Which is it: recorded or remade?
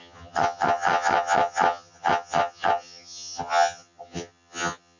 remade